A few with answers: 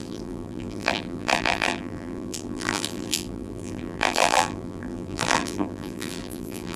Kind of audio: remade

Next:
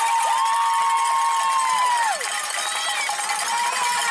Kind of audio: recorded